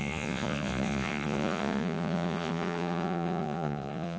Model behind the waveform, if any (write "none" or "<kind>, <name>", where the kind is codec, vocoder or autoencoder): vocoder, Vocos